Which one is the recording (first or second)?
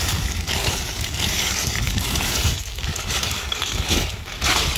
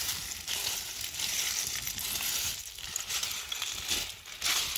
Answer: second